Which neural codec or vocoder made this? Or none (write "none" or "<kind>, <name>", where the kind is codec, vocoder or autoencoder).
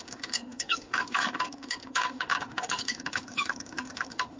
autoencoder, DAC-VAE